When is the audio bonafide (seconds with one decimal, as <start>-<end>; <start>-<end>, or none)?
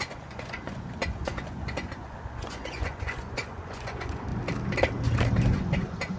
4.3-5.4